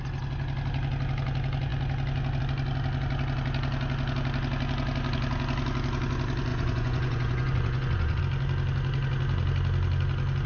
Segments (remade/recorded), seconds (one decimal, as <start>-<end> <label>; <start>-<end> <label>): 0.0-6.5 recorded; 6.5-8.2 remade; 8.2-10.5 recorded